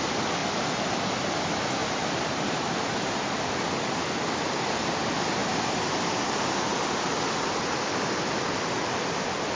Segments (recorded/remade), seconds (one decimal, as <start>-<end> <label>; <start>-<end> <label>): 0.0-1.8 recorded; 1.8-3.2 remade; 3.2-5.4 recorded; 5.4-6.7 remade; 6.7-9.6 recorded

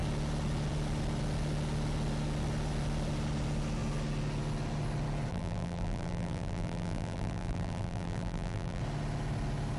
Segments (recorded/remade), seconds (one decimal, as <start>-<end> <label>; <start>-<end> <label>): 0.0-5.3 recorded; 5.3-8.8 remade; 8.8-9.8 recorded